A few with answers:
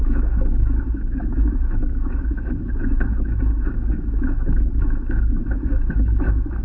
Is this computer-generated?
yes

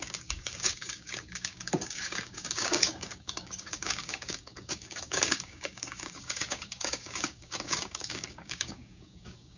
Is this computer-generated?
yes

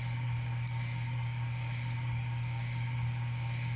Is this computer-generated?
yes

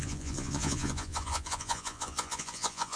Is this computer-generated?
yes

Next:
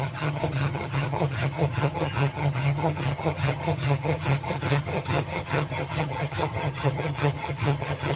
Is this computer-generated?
yes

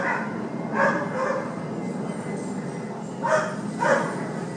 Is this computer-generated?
no